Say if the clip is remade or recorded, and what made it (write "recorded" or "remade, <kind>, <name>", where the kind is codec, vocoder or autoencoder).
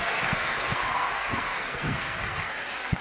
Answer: remade, codec, SNAC